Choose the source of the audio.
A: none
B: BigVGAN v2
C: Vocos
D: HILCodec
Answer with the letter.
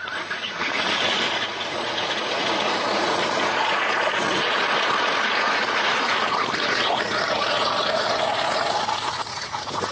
C